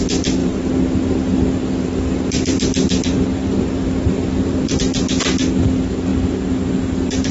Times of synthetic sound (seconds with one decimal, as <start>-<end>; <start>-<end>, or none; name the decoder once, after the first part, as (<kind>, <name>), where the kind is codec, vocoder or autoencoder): 0.4-4.8 (vocoder, BigVGAN v2); 6.1-7.3